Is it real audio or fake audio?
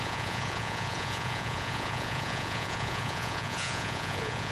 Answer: fake